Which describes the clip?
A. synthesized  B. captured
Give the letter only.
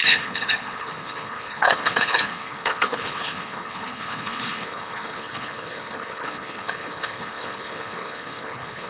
A